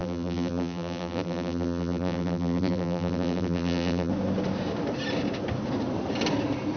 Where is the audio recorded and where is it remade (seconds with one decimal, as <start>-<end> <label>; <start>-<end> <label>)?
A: 0.0-4.1 remade; 4.1-6.8 recorded